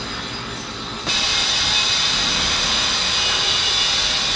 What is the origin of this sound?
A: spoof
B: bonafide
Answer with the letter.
B